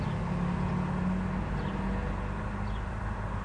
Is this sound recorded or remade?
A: recorded